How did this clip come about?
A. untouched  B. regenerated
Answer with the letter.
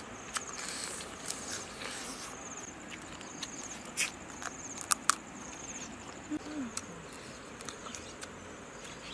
A